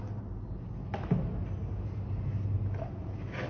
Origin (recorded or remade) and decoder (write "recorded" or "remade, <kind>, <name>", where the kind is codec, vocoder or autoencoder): recorded